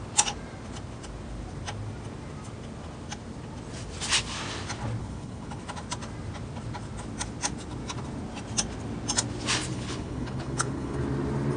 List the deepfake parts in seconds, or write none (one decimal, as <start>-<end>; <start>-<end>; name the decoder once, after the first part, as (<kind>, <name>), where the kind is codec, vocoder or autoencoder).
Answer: 5.0-5.6 (codec, HILCodec); 9.7-11.0